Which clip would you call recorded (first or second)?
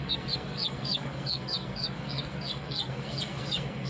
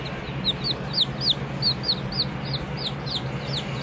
second